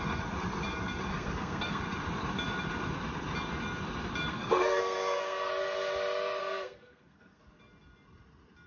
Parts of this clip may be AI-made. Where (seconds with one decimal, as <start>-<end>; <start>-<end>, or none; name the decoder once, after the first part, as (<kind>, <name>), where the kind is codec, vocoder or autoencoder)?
1.1-1.8 (codec, SNAC); 4.3-5.5; 6.4-7.4